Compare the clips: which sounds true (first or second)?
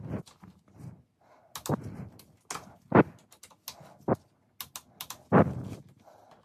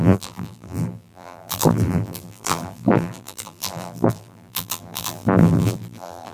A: first